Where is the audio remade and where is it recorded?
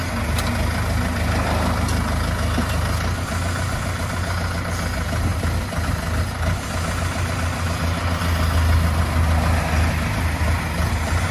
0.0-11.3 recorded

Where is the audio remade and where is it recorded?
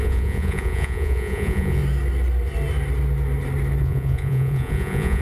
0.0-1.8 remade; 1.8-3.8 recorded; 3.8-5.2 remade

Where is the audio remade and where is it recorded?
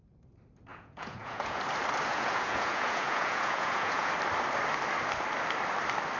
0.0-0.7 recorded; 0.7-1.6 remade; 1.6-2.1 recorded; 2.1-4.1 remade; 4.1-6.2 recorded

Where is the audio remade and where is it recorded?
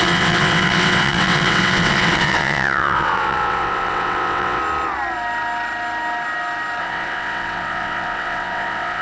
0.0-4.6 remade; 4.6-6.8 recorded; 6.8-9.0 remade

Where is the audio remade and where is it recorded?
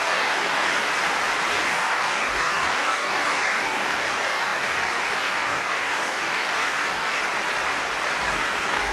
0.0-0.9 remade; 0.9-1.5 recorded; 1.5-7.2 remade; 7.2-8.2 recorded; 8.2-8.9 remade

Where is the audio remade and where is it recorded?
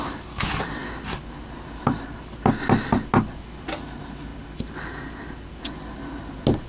0.0-6.7 recorded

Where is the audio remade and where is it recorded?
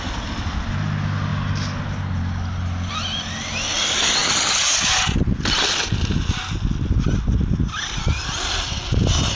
0.0-9.3 recorded